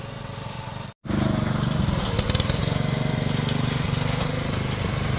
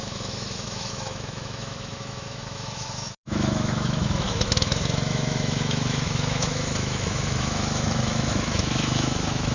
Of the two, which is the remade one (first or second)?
second